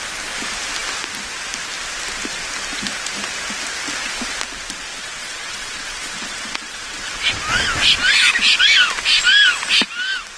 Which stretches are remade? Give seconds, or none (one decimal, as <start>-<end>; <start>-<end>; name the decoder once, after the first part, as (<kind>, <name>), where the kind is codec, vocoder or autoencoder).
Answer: 4.9-7.4 (vocoder, WaveNeXt)